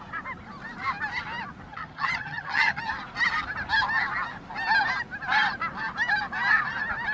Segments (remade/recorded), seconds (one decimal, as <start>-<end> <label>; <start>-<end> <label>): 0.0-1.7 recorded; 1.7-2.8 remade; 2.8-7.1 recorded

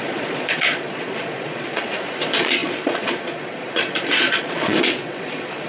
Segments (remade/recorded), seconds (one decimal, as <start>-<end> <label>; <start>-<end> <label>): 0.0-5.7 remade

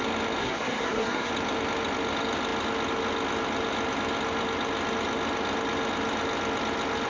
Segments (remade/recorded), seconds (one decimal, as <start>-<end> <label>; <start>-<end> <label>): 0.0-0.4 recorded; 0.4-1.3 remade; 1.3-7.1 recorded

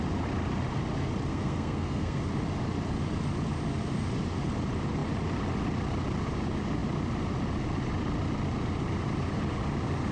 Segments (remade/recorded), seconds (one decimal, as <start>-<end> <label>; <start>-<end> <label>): 0.0-1.3 recorded; 1.3-2.2 remade; 2.2-10.1 recorded

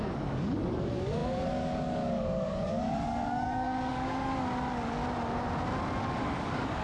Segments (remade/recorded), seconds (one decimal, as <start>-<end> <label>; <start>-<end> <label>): 0.0-5.0 remade; 5.0-6.0 recorded; 6.0-6.8 remade

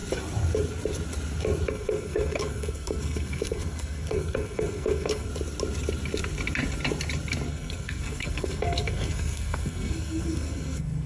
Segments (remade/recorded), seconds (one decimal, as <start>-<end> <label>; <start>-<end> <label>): 0.0-1.7 recorded; 1.7-5.3 remade; 5.3-7.5 recorded; 7.5-11.1 remade

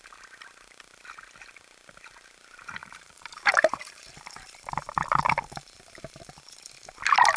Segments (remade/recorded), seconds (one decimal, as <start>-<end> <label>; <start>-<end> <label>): 0.0-2.8 recorded; 2.8-6.7 remade; 6.7-7.4 recorded